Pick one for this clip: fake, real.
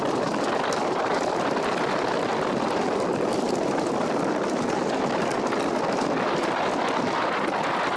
real